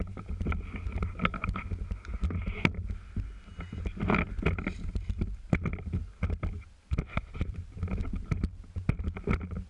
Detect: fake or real real